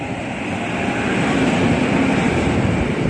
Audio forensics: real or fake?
real